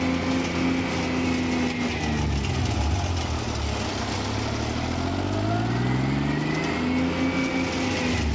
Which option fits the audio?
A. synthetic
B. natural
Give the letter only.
B